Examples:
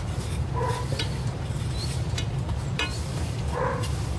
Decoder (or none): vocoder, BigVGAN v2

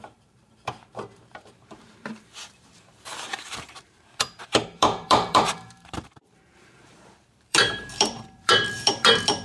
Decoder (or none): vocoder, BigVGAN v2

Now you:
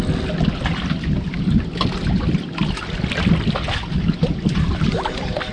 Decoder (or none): none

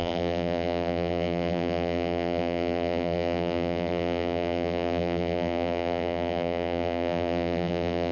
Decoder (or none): vocoder, BigVGAN v2